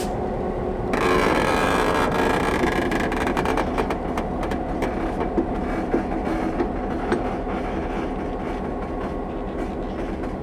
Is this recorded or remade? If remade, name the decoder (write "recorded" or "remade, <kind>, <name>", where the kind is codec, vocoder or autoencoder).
recorded